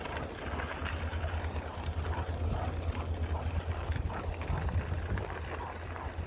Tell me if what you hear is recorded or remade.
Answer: recorded